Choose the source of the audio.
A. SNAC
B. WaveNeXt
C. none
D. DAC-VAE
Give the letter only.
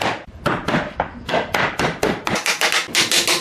C